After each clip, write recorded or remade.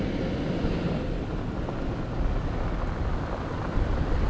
recorded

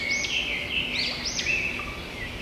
recorded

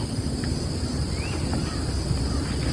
recorded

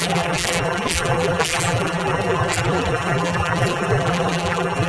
remade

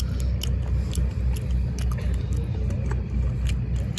recorded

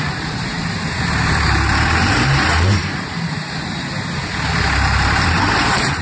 remade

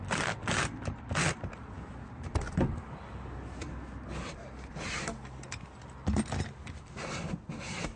recorded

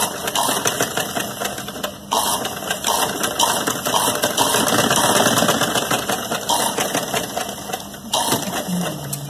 recorded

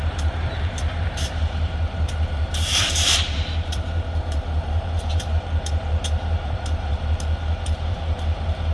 remade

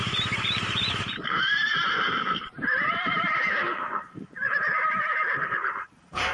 remade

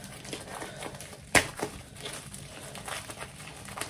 remade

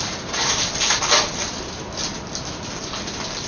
remade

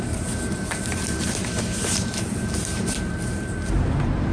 remade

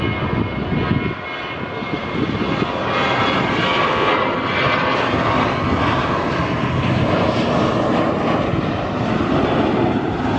recorded